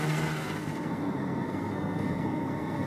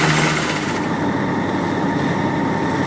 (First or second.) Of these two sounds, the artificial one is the first